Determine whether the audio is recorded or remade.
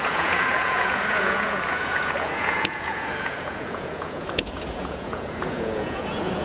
remade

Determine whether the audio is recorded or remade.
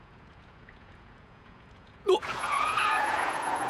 remade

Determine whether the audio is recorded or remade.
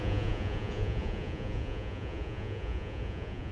remade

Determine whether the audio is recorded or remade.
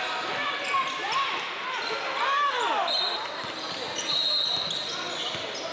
recorded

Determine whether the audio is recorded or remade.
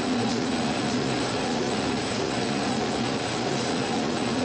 remade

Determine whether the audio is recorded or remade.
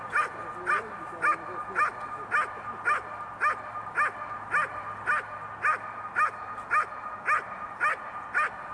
recorded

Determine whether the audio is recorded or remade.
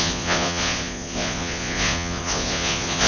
remade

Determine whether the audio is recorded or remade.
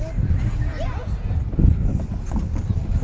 recorded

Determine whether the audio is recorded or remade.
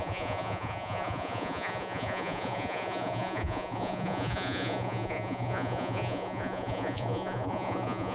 remade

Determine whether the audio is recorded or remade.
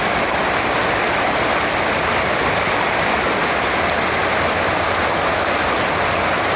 recorded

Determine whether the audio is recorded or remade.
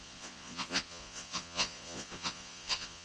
remade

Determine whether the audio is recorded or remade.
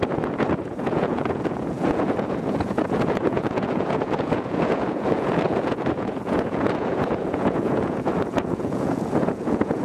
remade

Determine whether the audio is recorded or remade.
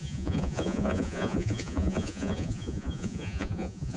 remade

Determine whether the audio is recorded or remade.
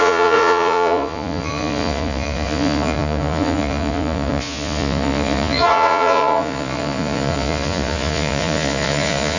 remade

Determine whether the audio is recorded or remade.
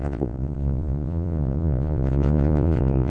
remade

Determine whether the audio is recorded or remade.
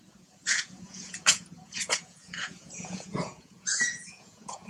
remade